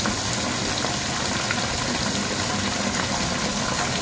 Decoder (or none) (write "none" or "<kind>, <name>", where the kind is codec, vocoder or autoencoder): none